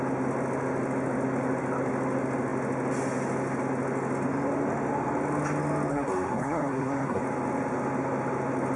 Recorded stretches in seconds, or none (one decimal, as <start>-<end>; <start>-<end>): 0.0-5.9; 7.2-8.8